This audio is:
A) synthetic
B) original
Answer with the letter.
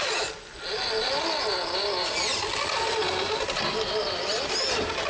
B